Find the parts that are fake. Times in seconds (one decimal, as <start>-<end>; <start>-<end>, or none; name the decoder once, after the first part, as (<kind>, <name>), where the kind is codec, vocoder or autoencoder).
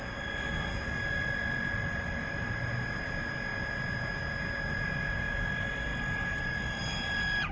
none